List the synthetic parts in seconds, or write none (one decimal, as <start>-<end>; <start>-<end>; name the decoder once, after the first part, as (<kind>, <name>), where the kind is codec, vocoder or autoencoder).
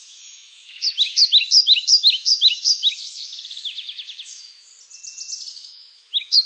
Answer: 0.0-4.7 (autoencoder, DAC-VAE); 5.5-6.5